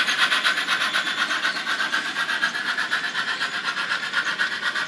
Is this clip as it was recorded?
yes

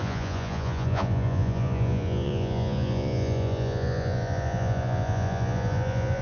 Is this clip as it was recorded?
no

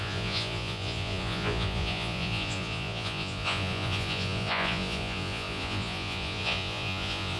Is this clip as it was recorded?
no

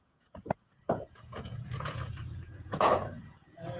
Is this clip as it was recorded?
no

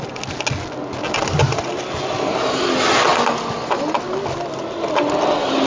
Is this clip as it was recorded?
yes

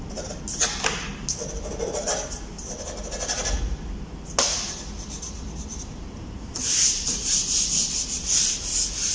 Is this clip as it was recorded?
yes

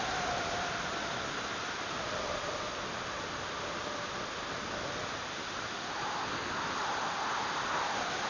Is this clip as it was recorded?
yes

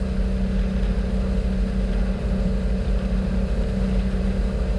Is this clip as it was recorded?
yes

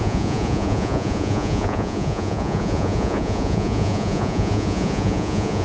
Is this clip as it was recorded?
no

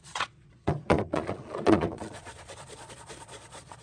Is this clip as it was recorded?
no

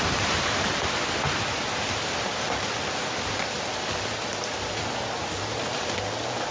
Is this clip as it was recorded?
yes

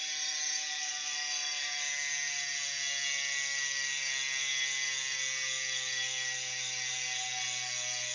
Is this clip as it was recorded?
yes